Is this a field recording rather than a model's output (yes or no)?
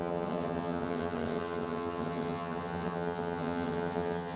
no